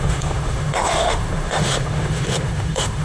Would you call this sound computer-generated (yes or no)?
yes